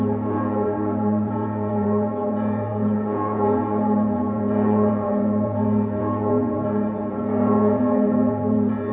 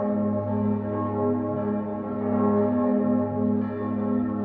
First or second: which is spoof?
first